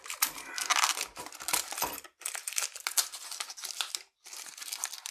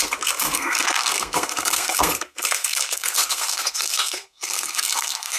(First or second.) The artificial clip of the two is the second